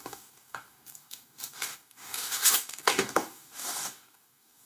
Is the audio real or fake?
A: fake